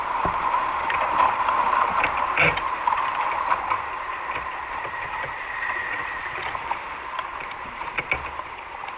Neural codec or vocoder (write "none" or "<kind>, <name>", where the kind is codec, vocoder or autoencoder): vocoder, BigVGAN v2